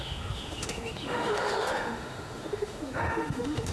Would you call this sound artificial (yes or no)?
yes